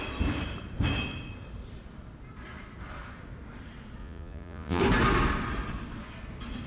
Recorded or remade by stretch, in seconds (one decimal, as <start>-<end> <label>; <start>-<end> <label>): 0.0-4.0 recorded; 4.0-4.8 remade; 4.8-6.7 recorded